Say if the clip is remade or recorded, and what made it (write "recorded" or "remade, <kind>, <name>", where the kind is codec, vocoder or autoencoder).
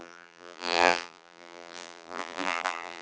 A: remade, vocoder, BigVGAN v2